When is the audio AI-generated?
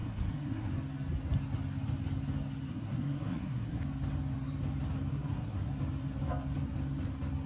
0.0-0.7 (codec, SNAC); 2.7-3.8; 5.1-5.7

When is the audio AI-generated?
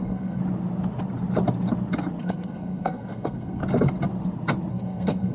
0.0-0.4 (codec, SNAC); 2.2-3.6; 4.7-5.3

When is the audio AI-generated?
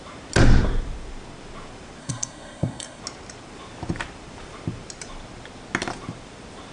2.0-3.0 (codec, SNAC)